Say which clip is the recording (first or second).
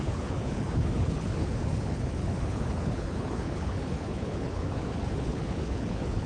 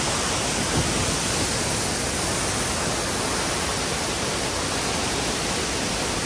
second